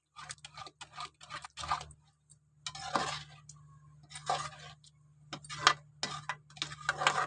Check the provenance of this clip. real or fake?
real